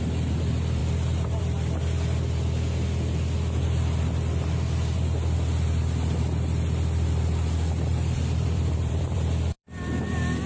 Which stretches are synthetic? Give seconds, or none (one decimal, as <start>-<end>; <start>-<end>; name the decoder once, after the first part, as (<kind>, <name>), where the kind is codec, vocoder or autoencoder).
0.8-1.4 (vocoder, BigVGAN v2); 7.9-10.5